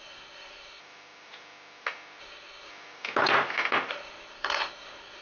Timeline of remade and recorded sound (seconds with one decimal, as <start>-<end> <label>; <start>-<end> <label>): 0.0-0.8 remade; 0.8-2.2 recorded; 2.2-2.7 remade; 2.7-3.9 recorded; 3.9-5.2 remade

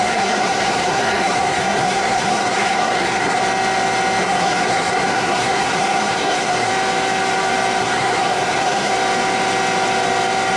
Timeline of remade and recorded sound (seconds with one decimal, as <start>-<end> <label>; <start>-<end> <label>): 0.0-3.4 remade; 3.4-4.2 recorded; 4.2-6.7 remade; 6.7-7.8 recorded; 7.8-8.9 remade; 8.9-10.6 recorded

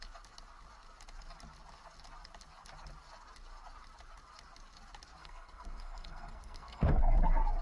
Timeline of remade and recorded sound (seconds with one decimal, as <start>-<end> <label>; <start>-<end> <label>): 0.0-5.2 recorded; 5.2-7.0 remade; 7.0-7.6 recorded

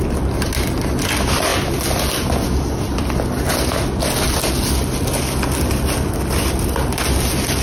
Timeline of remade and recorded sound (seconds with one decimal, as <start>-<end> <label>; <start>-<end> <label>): 0.0-7.6 recorded

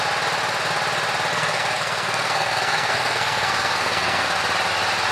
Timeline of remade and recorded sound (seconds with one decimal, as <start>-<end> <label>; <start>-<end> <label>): 0.0-1.3 recorded; 1.3-4.4 remade; 4.4-5.1 recorded

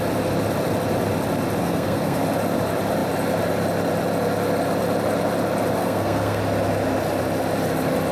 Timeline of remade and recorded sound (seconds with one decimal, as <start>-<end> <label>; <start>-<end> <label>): 0.0-1.6 recorded; 1.6-2.2 remade; 2.2-5.8 recorded; 5.8-6.4 remade; 6.4-8.1 recorded

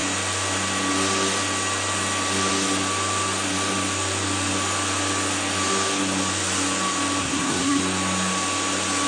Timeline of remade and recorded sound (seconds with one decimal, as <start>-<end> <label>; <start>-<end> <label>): 0.0-7.2 recorded; 7.2-7.8 remade; 7.8-9.1 recorded

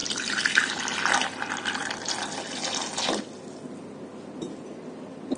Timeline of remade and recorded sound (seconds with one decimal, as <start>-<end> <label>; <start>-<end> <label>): 0.0-5.4 recorded